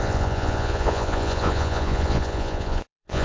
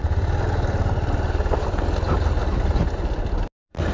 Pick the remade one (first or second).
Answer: first